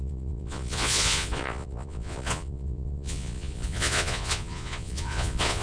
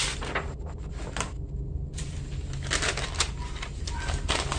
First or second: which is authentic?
second